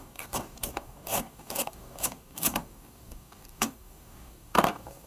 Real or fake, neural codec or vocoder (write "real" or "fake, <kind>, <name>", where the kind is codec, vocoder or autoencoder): fake, codec, DAC